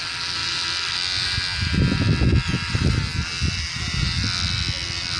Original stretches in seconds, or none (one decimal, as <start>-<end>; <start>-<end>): 0.0-5.2